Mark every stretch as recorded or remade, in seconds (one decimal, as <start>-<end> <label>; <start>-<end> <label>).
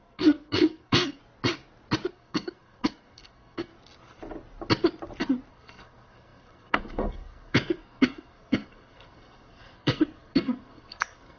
0.0-1.2 remade; 1.2-2.1 recorded; 2.1-3.7 remade; 3.7-5.5 recorded; 5.5-11.4 remade